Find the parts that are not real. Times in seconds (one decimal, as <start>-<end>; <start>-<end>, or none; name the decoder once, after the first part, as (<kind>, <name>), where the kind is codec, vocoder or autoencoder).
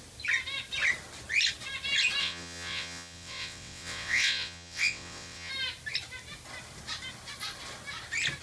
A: 2.2-5.5 (vocoder, WaveNeXt)